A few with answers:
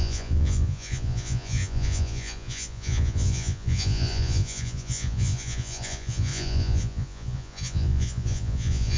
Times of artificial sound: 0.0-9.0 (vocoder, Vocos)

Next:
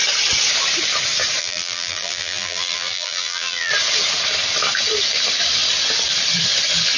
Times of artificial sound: 1.4-3.7 (vocoder, BigVGAN v2)

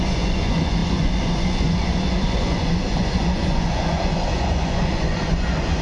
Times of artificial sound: 0.0-5.8 (vocoder, Vocos)

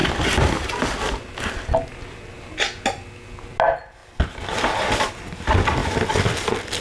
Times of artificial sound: none

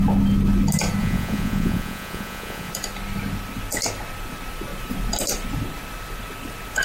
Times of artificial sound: 1.0-2.7 (vocoder, Vocos)